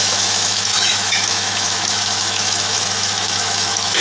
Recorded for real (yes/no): no